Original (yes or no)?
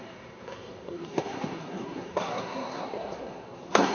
no